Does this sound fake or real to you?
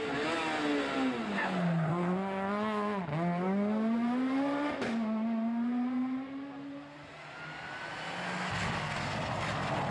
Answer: real